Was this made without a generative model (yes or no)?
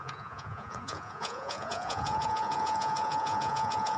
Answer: no